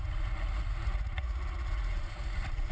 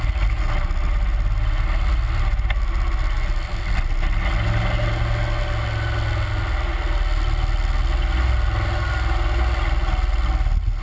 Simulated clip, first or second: first